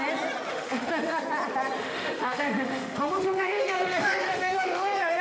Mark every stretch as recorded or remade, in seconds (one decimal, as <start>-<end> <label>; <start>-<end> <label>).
0.0-0.5 recorded; 0.5-1.2 remade; 1.2-1.8 recorded; 1.8-5.2 remade